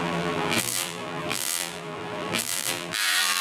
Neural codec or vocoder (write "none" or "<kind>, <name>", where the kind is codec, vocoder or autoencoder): vocoder, BigVGAN v2